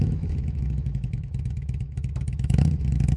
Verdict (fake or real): fake